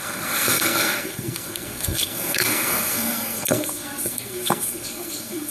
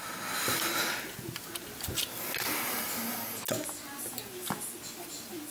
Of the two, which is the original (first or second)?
second